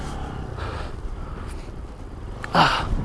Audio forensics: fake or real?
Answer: fake